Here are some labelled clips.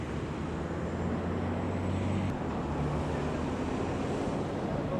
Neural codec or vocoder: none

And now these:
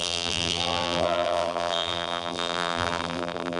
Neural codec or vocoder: vocoder, BigVGAN v2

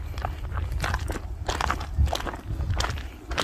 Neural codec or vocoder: none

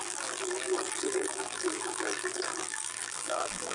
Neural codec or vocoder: vocoder, BigVGAN v2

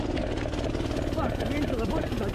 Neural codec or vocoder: none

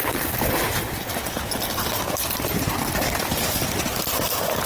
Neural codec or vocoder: none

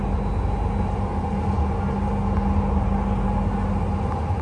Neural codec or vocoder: none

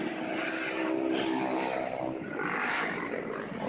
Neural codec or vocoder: none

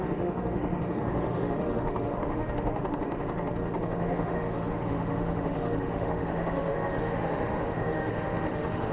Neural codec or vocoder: autoencoder, DAC-VAE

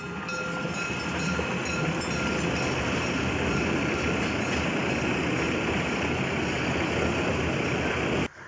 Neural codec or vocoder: none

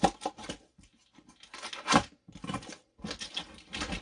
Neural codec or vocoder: none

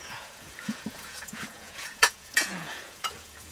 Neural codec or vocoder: vocoder, Vocos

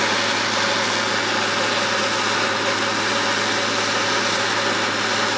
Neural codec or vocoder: none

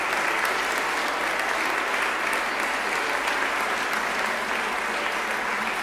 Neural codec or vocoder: none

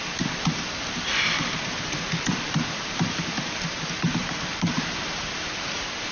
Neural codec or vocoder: vocoder, BigVGAN v2